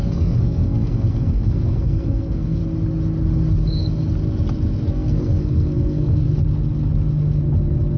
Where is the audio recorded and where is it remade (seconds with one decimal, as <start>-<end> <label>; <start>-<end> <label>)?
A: 0.0-2.6 remade; 2.6-4.9 recorded; 4.9-6.2 remade; 6.2-8.0 recorded